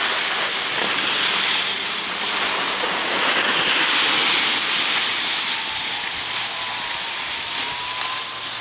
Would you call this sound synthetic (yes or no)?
no